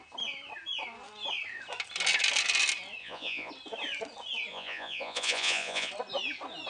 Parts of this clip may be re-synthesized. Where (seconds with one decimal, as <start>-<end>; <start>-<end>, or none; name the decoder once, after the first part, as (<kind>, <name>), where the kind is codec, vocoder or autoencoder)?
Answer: 3.0-3.5 (vocoder, Vocos); 4.5-5.9